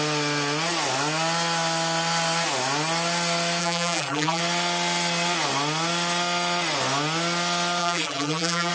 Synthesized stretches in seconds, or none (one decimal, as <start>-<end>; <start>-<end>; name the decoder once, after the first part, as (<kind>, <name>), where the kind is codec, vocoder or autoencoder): 3.6-4.4 (vocoder, BigVGAN v2); 7.8-8.7